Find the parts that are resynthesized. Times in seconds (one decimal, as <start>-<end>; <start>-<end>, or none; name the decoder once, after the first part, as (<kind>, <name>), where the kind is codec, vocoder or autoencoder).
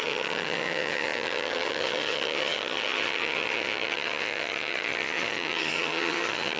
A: 0.0-6.6 (vocoder, HiFi-GAN)